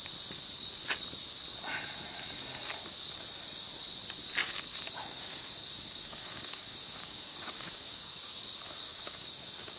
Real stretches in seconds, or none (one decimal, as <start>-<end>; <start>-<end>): 0.0-4.4; 8.4-8.9